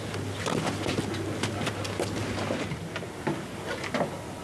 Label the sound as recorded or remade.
recorded